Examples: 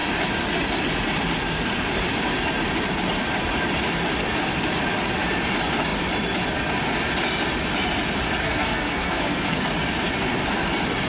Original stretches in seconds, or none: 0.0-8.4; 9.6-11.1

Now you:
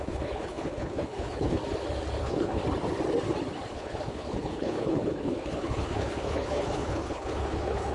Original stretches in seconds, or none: 1.6-2.2; 2.6-3.7

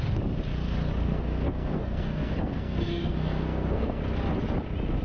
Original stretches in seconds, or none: 0.0-1.0; 4.0-5.0

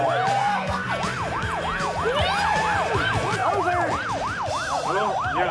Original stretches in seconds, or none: 0.0-0.4; 0.9-5.5

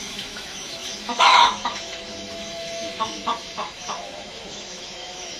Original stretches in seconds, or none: none

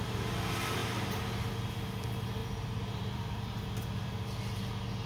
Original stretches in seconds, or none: 0.0-2.4; 3.6-5.1

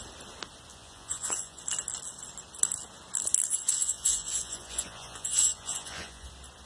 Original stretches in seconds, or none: 0.0-0.7; 1.6-3.5; 6.3-6.7

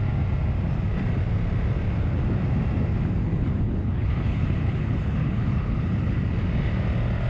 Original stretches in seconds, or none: 0.0-3.3; 6.2-7.3